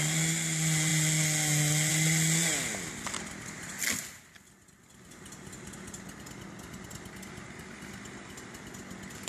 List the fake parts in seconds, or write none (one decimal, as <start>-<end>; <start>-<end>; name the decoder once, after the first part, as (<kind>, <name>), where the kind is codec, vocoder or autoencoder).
none